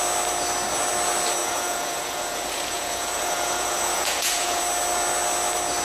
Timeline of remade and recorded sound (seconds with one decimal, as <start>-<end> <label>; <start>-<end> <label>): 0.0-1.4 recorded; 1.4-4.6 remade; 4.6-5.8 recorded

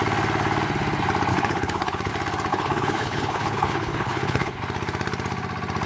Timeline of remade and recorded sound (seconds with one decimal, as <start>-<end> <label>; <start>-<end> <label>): 0.0-1.3 recorded; 1.3-2.1 remade; 2.1-2.5 recorded; 2.5-4.6 remade; 4.6-5.9 recorded

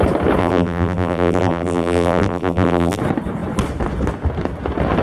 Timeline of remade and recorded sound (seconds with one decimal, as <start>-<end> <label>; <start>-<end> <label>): 0.0-0.4 recorded; 0.4-3.0 remade; 3.0-5.0 recorded